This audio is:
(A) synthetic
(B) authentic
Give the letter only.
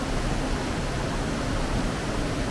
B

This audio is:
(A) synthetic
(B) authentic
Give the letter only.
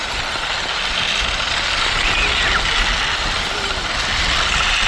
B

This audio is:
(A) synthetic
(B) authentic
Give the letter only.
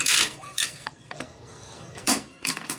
A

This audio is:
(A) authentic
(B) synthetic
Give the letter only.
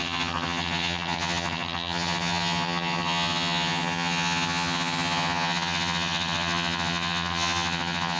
B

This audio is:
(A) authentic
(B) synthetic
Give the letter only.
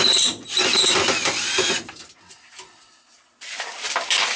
A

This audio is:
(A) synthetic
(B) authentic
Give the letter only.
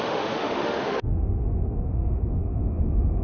A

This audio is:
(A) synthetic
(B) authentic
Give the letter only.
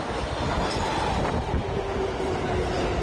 B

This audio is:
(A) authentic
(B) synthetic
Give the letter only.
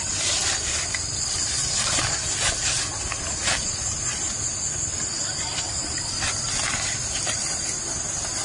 A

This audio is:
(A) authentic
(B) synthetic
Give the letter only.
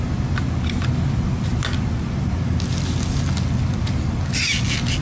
A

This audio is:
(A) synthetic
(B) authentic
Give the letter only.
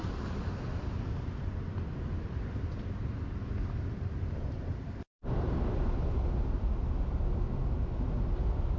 A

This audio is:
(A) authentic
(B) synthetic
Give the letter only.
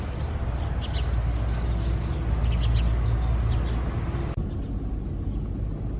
A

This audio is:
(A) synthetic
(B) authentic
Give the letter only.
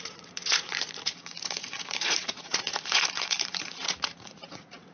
A